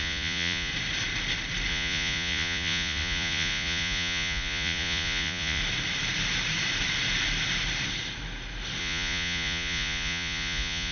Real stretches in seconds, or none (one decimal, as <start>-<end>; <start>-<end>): 0.7-1.7; 5.6-8.8